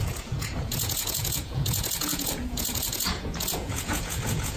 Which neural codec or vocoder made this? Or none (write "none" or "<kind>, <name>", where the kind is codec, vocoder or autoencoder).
vocoder, Vocos